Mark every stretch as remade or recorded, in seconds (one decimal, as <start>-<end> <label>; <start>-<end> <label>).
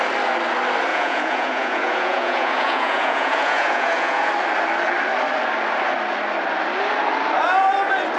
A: 0.0-0.9 recorded; 0.9-4.3 remade; 4.3-8.2 recorded